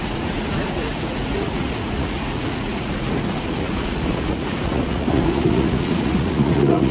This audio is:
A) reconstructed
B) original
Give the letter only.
A